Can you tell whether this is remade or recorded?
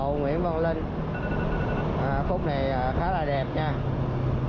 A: recorded